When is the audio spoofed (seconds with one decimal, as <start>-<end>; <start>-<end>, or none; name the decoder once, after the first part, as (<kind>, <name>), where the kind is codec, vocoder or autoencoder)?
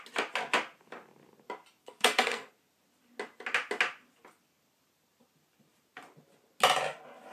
1.8-2.5 (codec, SNAC)